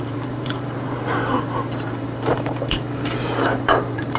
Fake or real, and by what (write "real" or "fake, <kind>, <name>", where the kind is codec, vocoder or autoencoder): fake, vocoder, BigVGAN v2